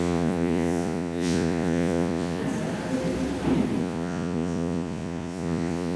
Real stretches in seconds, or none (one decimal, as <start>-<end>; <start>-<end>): 2.4-3.8